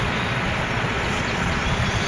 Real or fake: fake